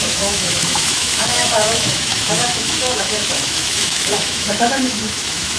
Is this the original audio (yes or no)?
no